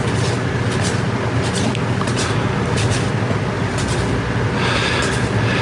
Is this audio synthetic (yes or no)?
no